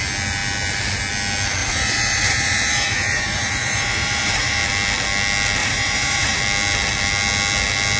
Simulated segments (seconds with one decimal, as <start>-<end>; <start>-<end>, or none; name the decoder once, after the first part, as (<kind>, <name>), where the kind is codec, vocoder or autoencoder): 1.6-4.6 (vocoder, Vocos); 5.6-6.4